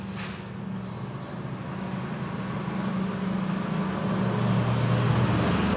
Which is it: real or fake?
real